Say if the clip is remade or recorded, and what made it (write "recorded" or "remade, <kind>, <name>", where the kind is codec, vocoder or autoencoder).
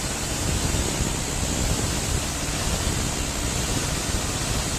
recorded